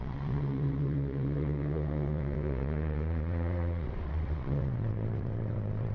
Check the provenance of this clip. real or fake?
fake